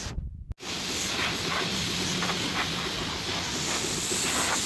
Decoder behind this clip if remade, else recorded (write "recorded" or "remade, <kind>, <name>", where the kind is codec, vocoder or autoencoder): recorded